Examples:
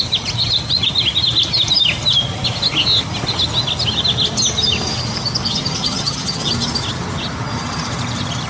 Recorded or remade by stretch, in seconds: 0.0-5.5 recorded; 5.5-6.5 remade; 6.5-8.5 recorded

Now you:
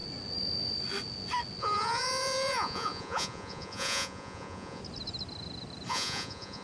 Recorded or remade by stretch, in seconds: 0.0-1.6 recorded; 1.6-4.8 remade; 4.8-5.9 recorded; 5.9-6.6 remade

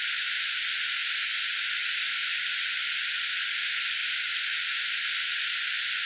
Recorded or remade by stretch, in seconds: 0.0-6.1 recorded

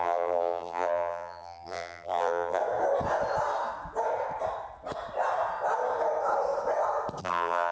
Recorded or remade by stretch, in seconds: 0.0-2.6 remade; 2.6-7.2 recorded; 7.2-7.7 remade

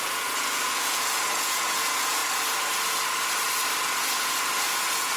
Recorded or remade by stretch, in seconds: 0.0-2.2 remade; 2.2-4.0 recorded; 4.0-5.2 remade